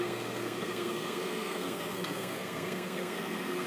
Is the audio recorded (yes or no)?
no